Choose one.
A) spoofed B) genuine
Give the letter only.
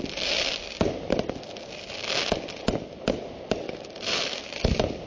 B